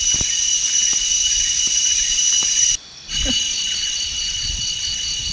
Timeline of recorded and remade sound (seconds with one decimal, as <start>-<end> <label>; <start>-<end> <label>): 0.0-3.5 recorded; 3.5-5.3 remade

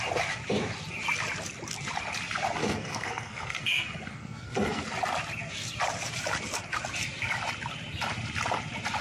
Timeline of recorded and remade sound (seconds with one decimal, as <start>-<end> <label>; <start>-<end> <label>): 0.0-2.6 recorded; 2.6-4.8 remade; 4.8-9.0 recorded